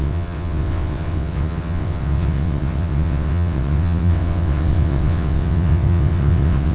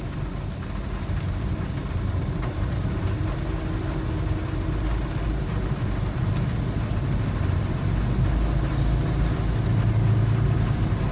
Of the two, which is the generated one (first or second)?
first